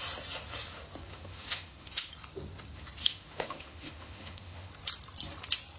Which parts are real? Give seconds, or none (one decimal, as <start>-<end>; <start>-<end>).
0.0-1.1; 2.1-3.0; 4.7-5.8